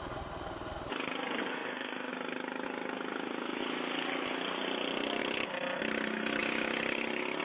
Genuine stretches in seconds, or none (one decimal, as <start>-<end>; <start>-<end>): 0.0-1.5; 2.1-7.4